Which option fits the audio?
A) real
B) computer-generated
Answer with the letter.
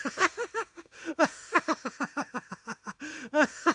B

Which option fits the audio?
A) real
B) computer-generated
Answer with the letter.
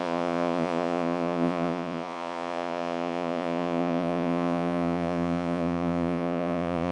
B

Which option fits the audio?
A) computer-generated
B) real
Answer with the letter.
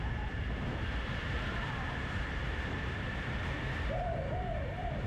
A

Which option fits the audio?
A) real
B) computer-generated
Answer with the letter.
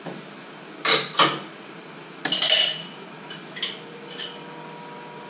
A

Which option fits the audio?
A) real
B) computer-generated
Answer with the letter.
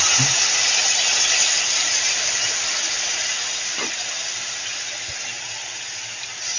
A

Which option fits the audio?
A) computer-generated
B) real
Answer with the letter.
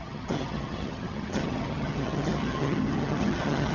A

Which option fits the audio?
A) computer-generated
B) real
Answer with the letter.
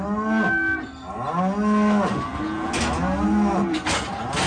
B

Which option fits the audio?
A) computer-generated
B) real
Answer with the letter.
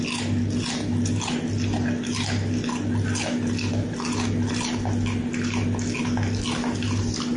B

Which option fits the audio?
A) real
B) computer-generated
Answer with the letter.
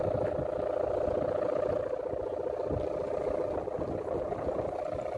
A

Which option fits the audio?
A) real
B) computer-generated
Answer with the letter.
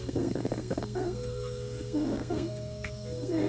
B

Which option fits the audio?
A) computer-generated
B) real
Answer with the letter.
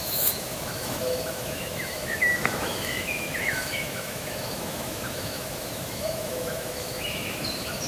A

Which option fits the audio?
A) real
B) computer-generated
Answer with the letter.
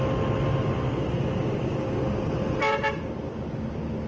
A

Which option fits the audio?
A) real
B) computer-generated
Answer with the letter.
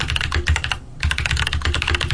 A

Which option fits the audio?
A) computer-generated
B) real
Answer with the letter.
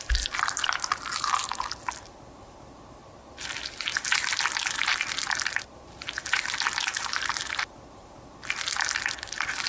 B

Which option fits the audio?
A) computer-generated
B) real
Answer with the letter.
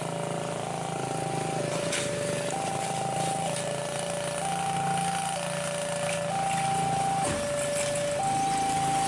B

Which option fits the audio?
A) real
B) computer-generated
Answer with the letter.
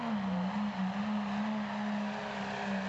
A